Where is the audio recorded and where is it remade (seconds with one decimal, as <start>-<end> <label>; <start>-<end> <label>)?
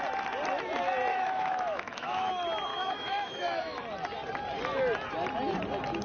0.0-1.1 recorded; 1.1-2.3 remade; 2.3-2.7 recorded; 2.7-3.8 remade; 3.8-6.0 recorded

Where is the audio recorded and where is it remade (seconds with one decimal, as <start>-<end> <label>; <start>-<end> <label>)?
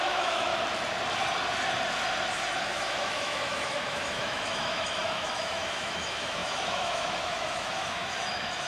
0.0-0.5 remade; 0.5-2.6 recorded; 2.6-8.7 remade